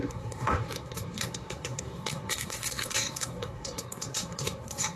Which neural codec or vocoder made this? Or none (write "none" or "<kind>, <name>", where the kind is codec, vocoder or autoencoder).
codec, SNAC